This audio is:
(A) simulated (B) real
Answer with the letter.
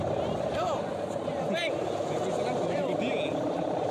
B